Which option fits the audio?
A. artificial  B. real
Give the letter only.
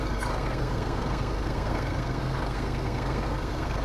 A